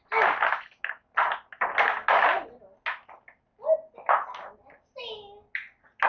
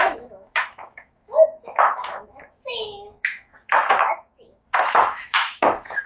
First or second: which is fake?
second